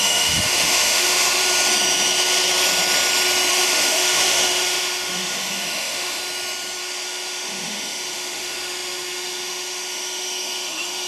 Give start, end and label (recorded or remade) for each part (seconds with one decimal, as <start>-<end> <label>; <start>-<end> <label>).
0.0-1.4 remade; 1.4-3.5 recorded; 3.5-6.2 remade; 6.2-6.8 recorded; 6.8-11.1 remade